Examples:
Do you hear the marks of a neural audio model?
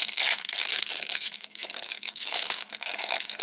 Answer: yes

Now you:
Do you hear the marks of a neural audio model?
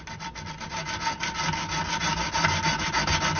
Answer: no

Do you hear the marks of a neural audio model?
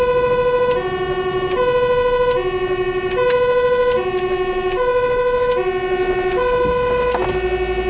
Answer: no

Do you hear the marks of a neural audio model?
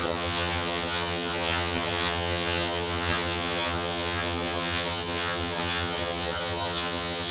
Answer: yes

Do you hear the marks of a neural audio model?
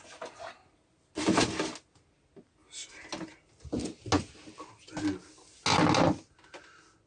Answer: no